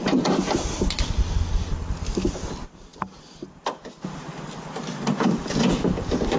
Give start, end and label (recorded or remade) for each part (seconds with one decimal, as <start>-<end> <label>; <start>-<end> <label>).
0.0-6.4 recorded